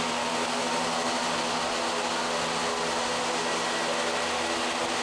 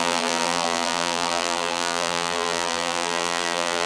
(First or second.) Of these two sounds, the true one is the first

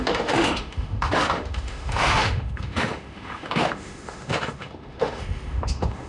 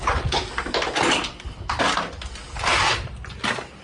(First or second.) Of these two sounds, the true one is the second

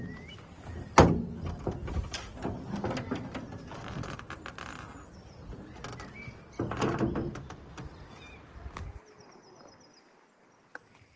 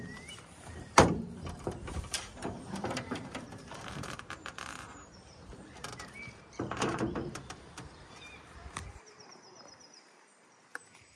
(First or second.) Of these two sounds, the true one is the first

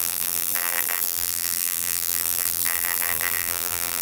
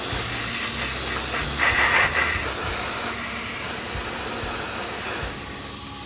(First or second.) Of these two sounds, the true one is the second